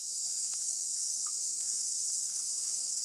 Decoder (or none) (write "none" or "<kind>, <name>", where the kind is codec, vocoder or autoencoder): codec, SNAC